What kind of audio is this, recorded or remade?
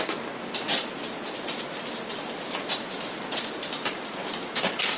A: recorded